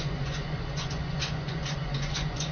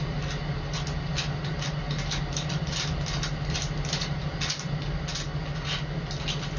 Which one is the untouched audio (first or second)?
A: second